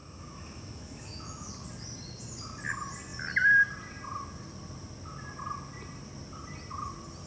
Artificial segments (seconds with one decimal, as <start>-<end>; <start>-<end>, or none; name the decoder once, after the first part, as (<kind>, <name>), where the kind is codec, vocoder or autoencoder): 0.0-1.5 (autoencoder, DAC-VAE)

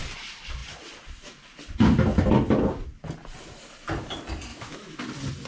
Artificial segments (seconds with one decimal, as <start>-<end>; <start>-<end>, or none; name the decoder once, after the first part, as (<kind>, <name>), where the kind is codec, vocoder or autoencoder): 4.5-5.0 (autoencoder, DAC-VAE)

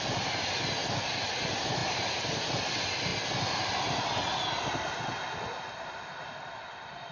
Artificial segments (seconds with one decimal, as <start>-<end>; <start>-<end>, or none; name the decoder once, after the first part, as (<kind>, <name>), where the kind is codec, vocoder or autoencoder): none

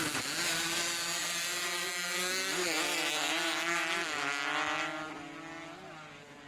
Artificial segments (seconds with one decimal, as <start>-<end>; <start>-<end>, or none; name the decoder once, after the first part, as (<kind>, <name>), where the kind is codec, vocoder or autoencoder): none

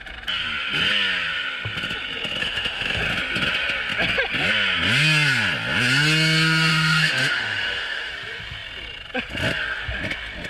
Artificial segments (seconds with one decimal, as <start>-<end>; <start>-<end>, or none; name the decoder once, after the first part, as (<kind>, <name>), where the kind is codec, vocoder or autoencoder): 2.4-3.0 (autoencoder, DAC-VAE); 6.7-8.1

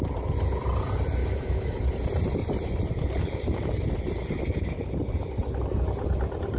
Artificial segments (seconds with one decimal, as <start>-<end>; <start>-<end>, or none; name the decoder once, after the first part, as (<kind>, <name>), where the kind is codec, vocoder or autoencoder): 1.2-1.9 (autoencoder, DAC-VAE)